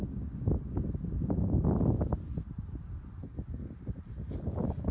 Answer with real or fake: real